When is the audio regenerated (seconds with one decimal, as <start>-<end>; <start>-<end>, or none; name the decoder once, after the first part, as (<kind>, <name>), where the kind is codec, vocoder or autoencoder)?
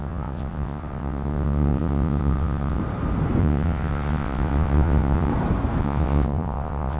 0.0-2.8 (vocoder, WaveNeXt); 3.4-5.3; 5.8-7.0